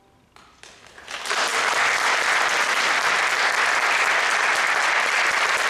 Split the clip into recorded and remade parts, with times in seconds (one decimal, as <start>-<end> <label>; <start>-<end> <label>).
0.0-5.7 recorded